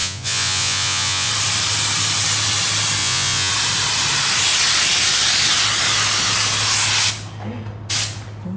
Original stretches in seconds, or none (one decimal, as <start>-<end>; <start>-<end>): 1.3-3.0; 3.5-8.6